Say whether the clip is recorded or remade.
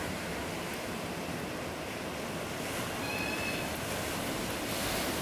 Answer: recorded